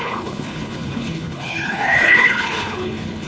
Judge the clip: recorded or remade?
remade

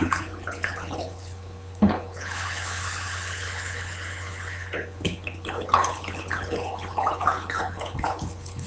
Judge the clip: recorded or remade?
remade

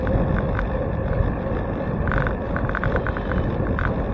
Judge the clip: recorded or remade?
recorded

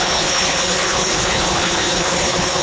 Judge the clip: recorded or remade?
remade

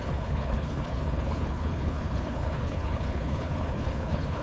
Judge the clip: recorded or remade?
remade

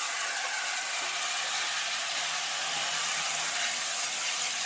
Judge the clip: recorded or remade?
recorded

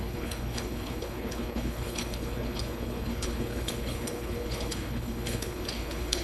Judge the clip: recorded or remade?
remade